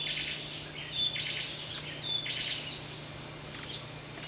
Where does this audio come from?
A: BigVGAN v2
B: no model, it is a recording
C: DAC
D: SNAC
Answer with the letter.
B